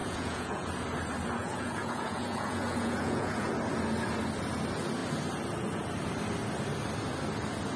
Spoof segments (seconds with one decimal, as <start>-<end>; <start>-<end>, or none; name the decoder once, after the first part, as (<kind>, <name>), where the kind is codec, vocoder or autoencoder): 0.0-0.7 (vocoder, Vocos); 1.4-3.5